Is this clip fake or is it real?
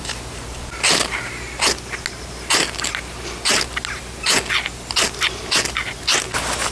real